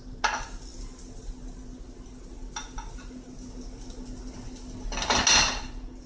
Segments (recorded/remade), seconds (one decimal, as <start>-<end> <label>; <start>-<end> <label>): 0.0-6.1 recorded